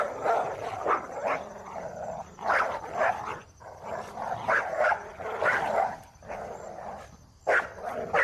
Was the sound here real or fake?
real